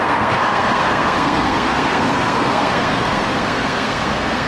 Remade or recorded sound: remade